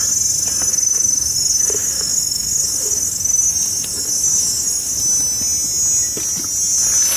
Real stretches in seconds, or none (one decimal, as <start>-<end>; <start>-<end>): 0.0-0.7; 5.0-7.2